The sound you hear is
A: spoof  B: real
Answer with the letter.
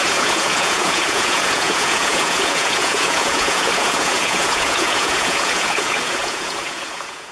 A